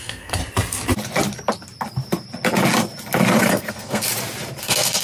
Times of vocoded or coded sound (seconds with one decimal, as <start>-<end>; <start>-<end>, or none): 0.0-0.4; 3.4-4.1; 4.6-5.0